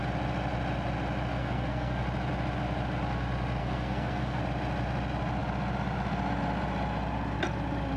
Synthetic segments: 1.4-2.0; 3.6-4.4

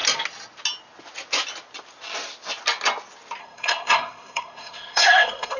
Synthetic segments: 3.4-5.6